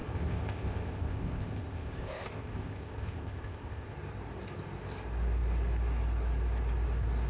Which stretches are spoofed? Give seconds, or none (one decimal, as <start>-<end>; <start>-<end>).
0.0-3.9